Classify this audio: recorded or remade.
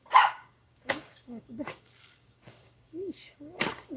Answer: remade